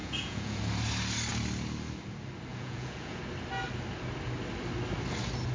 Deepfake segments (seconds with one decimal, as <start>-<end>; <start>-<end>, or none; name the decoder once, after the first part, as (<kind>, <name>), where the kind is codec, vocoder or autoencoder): 0.0-0.6 (vocoder, Vocos); 2.5-3.2

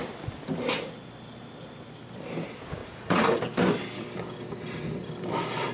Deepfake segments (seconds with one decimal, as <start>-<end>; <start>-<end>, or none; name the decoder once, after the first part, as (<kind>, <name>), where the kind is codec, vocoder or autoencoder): 2.8-3.4 (vocoder, Vocos)

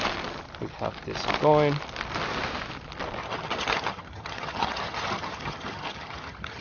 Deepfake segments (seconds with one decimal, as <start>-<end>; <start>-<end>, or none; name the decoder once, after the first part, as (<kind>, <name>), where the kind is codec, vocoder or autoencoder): 3.2-6.6 (vocoder, HiFi-GAN)

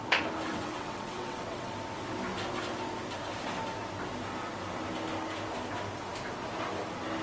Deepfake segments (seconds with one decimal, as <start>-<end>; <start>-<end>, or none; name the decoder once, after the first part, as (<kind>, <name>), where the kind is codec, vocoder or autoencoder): 0.5-1.7 (vocoder, WaveNeXt)

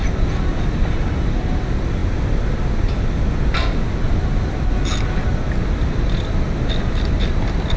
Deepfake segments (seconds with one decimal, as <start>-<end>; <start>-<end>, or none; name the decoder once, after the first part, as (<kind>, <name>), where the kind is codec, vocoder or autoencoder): none

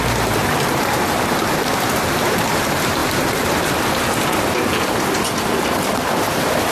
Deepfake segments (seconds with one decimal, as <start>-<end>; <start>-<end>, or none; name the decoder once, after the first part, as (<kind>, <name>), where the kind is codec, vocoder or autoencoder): 0.4-2.5 (vocoder, BigVGAN v2)